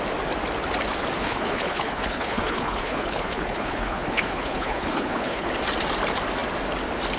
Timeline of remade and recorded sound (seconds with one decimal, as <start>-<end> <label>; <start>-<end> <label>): 0.0-1.2 recorded; 1.2-5.5 remade; 5.5-7.2 recorded